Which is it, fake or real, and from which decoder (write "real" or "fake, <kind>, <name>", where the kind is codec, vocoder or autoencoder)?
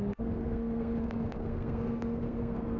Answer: fake, codec, SNAC